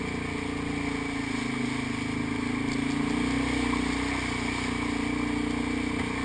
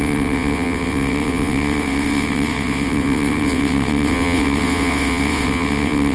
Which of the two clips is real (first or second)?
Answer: first